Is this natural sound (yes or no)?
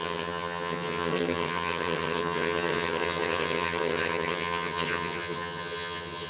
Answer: no